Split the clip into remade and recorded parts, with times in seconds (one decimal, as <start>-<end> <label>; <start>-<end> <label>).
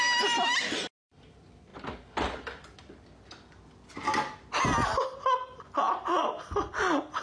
0.0-7.2 recorded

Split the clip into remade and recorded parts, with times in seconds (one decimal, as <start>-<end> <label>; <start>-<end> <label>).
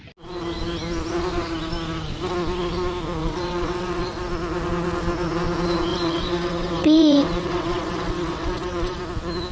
0.0-3.2 recorded; 3.2-4.2 remade; 4.2-5.9 recorded; 5.9-9.0 remade; 9.0-9.5 recorded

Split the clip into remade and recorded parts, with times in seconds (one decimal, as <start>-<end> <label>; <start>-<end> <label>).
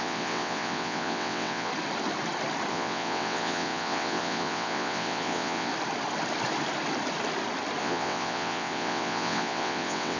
0.0-1.7 remade; 1.7-2.7 recorded; 2.7-5.7 remade; 5.7-7.8 recorded; 7.8-10.2 remade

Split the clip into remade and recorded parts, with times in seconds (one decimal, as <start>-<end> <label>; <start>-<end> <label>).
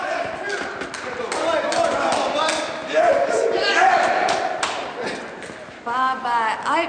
0.0-6.9 recorded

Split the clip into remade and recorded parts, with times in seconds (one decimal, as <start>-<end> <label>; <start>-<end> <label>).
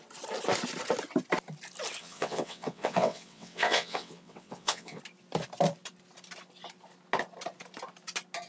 0.0-2.0 recorded; 2.0-5.0 remade; 5.0-8.5 recorded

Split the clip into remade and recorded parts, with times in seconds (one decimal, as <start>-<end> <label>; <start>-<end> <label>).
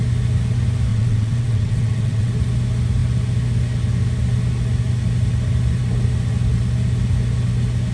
0.0-0.9 recorded; 0.9-2.3 remade; 2.3-7.9 recorded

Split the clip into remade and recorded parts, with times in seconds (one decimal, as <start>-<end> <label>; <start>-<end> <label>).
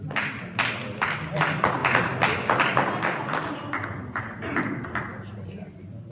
0.0-6.1 recorded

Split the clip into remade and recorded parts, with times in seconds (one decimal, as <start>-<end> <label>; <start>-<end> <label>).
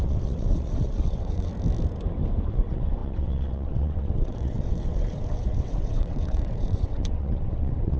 0.0-1.5 remade; 1.5-2.5 recorded; 2.5-8.0 remade